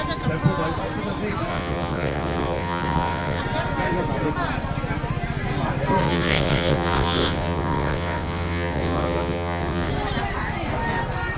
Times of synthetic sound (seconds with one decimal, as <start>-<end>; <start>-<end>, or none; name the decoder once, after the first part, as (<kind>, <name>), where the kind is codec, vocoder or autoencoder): 1.5-3.4 (vocoder, WaveNeXt); 6.0-9.9